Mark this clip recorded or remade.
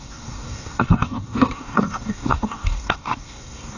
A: remade